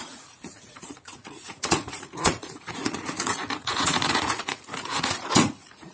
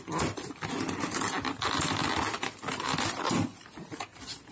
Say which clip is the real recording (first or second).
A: second